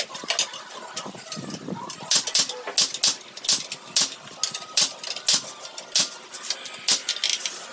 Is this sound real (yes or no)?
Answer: yes